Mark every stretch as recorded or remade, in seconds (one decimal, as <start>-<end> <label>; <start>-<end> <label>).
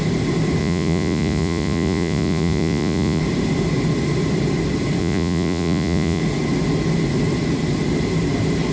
0.0-0.6 recorded; 0.6-3.2 remade; 3.2-5.0 recorded; 5.0-6.2 remade; 6.2-8.7 recorded